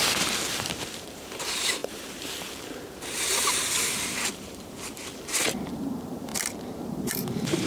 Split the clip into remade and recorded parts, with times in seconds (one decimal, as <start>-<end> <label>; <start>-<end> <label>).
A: 0.0-6.3 remade; 6.3-6.8 recorded; 6.8-7.7 remade